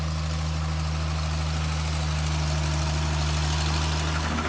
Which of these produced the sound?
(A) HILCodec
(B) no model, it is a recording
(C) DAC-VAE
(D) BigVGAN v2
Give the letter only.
B